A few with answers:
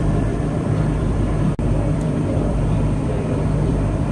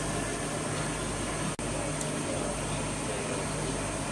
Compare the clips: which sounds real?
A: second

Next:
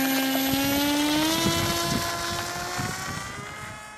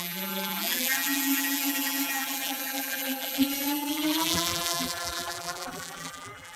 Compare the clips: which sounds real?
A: first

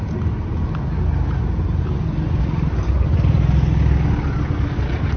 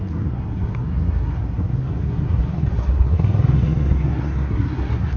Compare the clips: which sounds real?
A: first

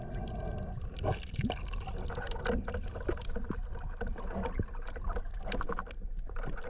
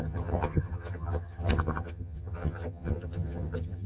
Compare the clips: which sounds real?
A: first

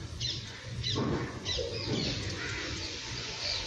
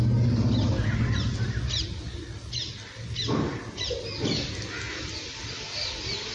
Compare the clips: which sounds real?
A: second